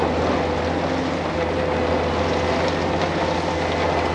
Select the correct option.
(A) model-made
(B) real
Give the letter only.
B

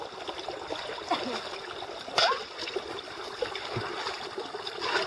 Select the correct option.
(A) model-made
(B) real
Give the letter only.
B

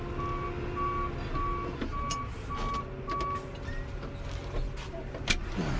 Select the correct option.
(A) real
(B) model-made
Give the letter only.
A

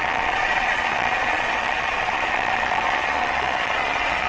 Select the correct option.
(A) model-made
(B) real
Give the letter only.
A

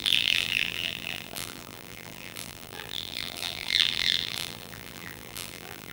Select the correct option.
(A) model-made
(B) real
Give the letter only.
A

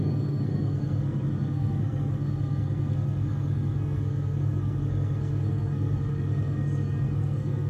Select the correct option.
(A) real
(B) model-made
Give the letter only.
B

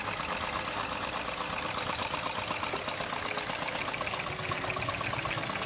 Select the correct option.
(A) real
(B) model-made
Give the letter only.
A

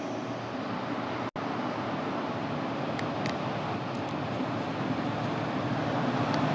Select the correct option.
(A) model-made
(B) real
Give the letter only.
B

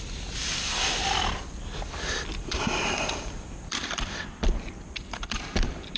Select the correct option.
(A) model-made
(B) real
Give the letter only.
A